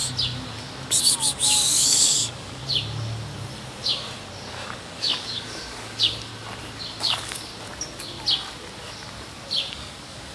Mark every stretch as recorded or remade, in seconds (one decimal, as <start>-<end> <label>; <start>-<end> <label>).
0.0-1.0 recorded; 1.0-2.6 remade; 2.6-4.5 recorded; 4.5-6.3 remade; 6.3-7.0 recorded; 7.0-7.5 remade; 7.5-9.7 recorded; 9.7-10.3 remade